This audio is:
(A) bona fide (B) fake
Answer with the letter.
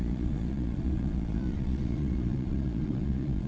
B